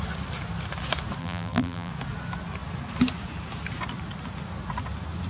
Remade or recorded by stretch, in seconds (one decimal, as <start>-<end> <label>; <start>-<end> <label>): 0.0-1.2 recorded; 1.2-1.9 remade; 1.9-5.3 recorded